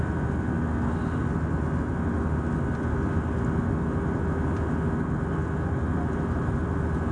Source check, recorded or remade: recorded